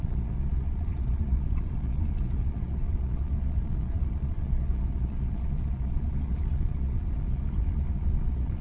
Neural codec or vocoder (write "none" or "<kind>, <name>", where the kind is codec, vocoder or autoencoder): vocoder, Vocos